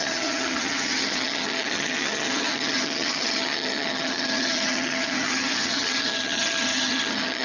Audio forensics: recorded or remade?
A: remade